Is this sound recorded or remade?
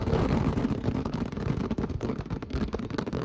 remade